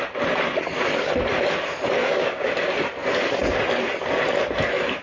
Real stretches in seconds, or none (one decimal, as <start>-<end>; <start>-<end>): 0.0-2.0; 2.5-5.0